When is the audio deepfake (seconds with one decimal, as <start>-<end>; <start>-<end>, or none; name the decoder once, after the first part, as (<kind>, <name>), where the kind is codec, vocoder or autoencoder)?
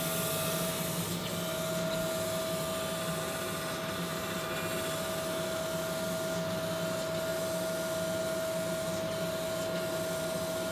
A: none